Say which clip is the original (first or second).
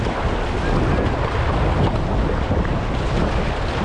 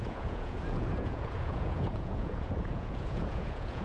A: first